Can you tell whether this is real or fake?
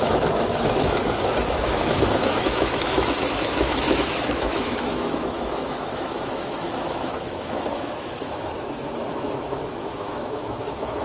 fake